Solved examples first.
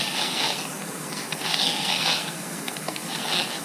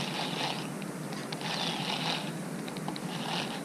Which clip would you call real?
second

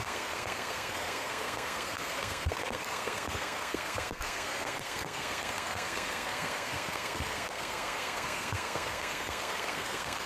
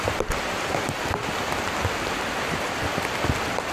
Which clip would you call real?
second